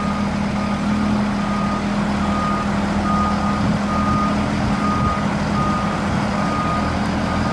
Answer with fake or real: real